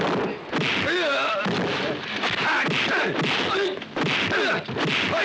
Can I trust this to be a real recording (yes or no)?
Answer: yes